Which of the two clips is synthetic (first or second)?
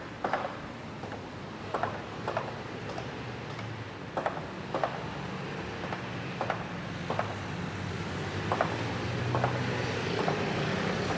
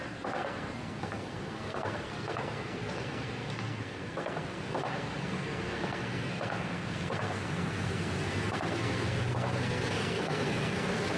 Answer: second